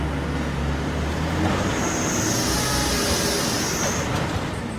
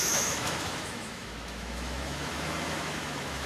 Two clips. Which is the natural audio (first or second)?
first